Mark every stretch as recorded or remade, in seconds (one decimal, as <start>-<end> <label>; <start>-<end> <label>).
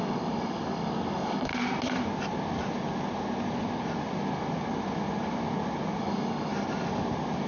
0.0-1.5 remade; 1.5-6.0 recorded; 6.0-6.5 remade; 6.5-7.5 recorded